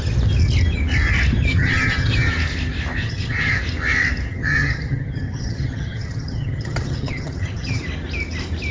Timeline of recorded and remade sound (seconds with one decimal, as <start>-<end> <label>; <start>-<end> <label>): 0.0-1.5 recorded; 1.5-2.3 remade; 2.3-3.0 recorded; 3.0-3.6 remade; 3.6-4.3 recorded; 4.3-7.8 remade; 7.8-8.7 recorded